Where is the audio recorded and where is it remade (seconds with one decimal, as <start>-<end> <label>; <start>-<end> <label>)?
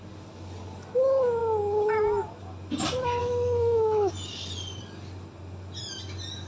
0.0-3.2 recorded; 3.2-4.1 remade; 4.1-6.5 recorded